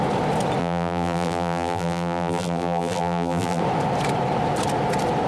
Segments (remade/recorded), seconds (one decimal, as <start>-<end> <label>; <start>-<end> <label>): 0.0-0.6 recorded; 0.6-3.6 remade; 3.6-5.3 recorded